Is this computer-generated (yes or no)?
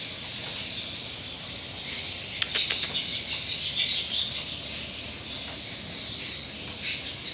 no